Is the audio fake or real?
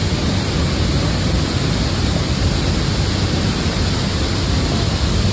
real